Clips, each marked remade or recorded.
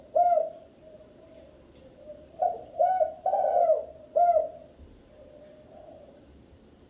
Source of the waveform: remade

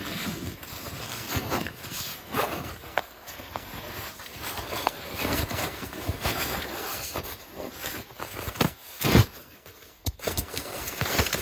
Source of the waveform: remade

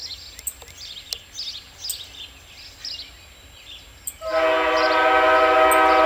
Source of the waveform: recorded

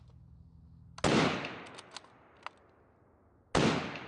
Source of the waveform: recorded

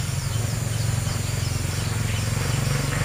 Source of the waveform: recorded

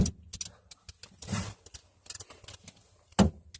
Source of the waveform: recorded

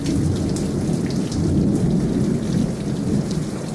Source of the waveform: recorded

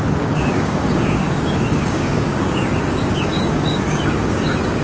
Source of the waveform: remade